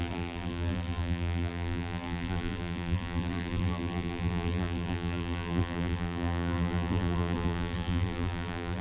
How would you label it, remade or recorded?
remade